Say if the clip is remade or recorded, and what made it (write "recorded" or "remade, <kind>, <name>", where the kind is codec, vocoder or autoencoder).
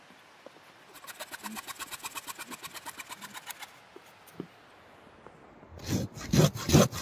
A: recorded